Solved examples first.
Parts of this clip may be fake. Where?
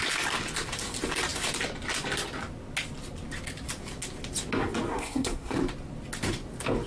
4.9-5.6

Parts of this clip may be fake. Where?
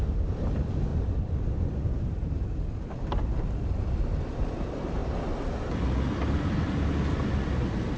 none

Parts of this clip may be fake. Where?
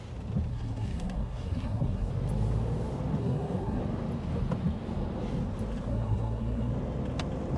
0.5-2.1; 3.2-3.8; 5.9-6.7